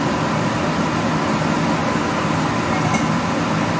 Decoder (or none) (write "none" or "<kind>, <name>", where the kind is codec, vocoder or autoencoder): none